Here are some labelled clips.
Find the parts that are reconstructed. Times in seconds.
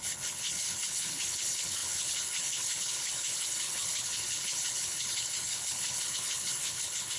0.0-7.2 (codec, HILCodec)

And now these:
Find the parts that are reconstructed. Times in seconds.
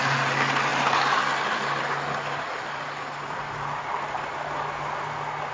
none